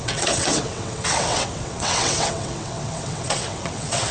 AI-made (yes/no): yes